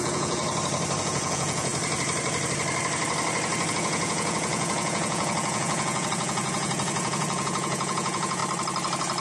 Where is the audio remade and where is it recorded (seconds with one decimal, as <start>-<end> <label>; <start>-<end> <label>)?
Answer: 0.0-0.4 remade; 0.4-1.0 recorded; 1.0-1.7 remade; 1.7-3.7 recorded; 3.7-8.4 remade; 8.4-9.2 recorded